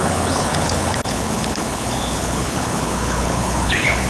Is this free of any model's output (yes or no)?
no